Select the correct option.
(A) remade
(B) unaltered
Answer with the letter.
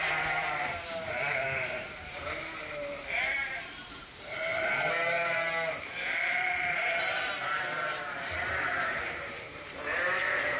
A